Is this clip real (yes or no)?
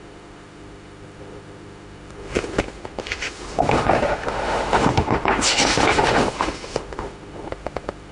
no